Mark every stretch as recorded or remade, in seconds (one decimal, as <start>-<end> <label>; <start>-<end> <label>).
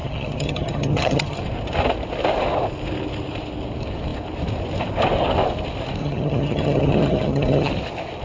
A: 0.0-1.4 remade; 1.4-6.0 recorded; 6.0-7.7 remade; 7.7-8.2 recorded